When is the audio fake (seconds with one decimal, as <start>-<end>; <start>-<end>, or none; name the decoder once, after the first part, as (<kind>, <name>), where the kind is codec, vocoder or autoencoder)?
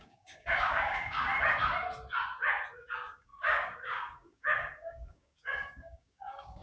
0.0-1.3 (codec, DAC); 2.8-6.6